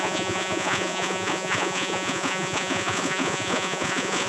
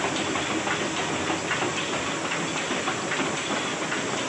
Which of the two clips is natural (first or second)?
second